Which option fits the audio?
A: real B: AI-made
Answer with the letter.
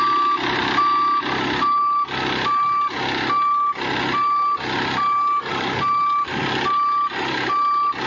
A